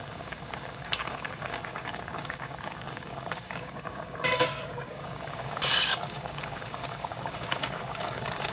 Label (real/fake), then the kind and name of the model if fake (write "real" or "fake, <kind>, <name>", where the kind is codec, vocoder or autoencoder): fake, codec, DAC